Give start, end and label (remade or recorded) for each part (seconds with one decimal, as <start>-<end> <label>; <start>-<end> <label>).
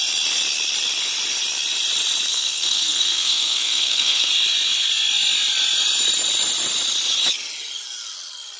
0.0-2.3 recorded; 2.3-4.3 remade; 4.3-8.6 recorded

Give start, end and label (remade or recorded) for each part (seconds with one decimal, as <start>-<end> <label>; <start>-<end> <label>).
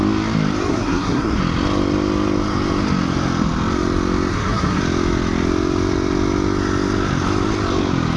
0.0-0.7 recorded; 0.7-1.4 remade; 1.4-4.3 recorded; 4.3-4.8 remade; 4.8-8.2 recorded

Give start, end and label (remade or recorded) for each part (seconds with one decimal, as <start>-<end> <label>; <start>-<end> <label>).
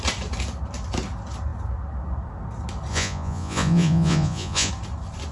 0.0-2.9 recorded; 2.9-4.7 remade; 4.7-5.3 recorded